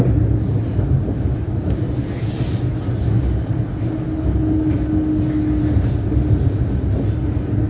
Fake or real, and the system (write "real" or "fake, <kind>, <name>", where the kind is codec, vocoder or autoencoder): real